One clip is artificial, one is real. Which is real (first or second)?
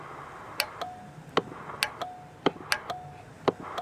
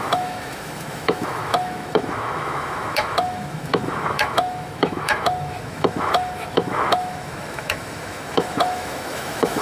first